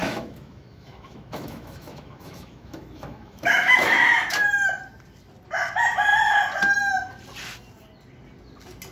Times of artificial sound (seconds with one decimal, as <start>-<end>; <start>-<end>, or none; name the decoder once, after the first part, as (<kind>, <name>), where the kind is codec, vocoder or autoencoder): 0.0-4.0 (autoencoder, DAC-VAE)